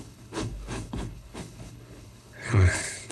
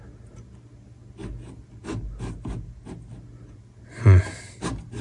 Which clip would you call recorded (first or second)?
second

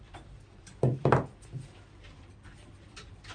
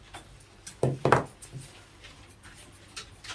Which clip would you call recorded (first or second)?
second